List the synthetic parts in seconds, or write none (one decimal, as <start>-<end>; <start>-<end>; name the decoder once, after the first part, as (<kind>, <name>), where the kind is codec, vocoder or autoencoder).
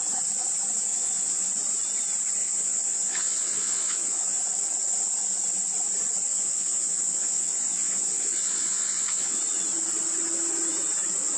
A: 0.9-1.5 (vocoder, Vocos); 2.4-4.4; 6.3-9.4